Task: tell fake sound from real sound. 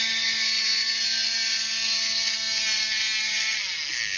real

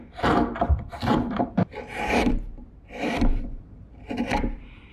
fake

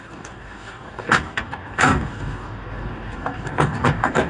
fake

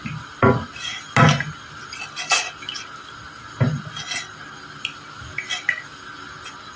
real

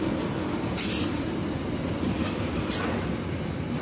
real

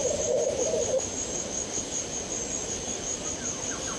real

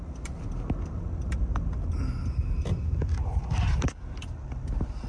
real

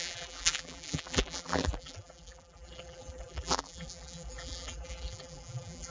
fake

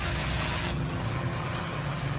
fake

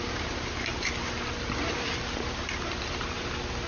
real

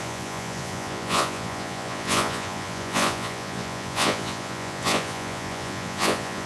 fake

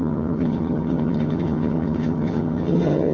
fake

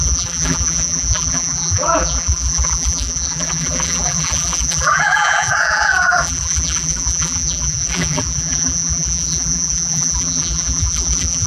fake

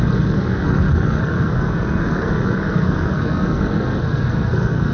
fake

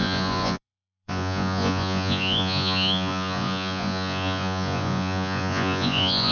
fake